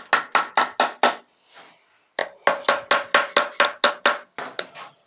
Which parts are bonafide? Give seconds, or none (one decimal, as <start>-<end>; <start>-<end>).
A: 0.0-5.1